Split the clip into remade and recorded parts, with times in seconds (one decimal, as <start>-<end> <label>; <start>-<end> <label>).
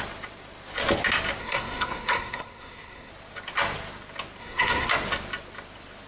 0.0-1.4 recorded; 1.4-3.1 remade; 3.1-4.4 recorded; 4.4-4.9 remade; 4.9-6.1 recorded